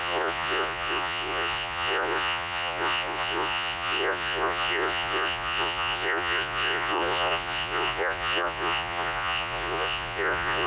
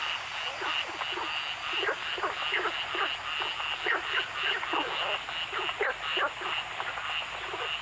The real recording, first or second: second